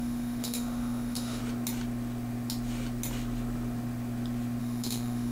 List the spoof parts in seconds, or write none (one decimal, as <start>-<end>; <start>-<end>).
0.0-1.4; 4.6-5.3